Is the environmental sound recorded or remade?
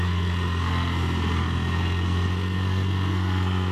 remade